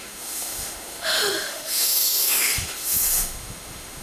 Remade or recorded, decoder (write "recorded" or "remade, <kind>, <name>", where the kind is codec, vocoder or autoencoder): remade, autoencoder, DAC-VAE